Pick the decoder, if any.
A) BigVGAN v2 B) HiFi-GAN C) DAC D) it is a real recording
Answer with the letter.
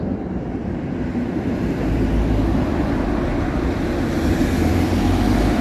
A